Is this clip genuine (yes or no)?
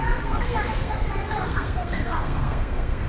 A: no